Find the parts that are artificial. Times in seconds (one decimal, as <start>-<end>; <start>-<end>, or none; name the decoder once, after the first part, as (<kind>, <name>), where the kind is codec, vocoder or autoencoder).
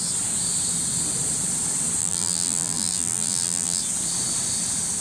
2.0-3.8 (vocoder, BigVGAN v2)